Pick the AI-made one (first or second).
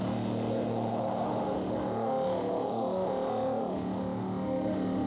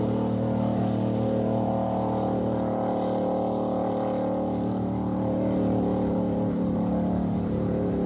first